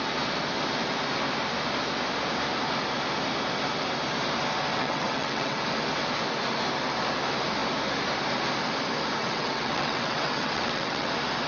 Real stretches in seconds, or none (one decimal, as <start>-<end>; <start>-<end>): 0.0-4.7; 5.6-9.2; 11.1-11.5